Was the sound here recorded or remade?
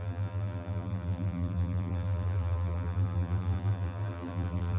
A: remade